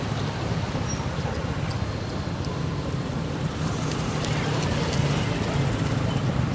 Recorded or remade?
recorded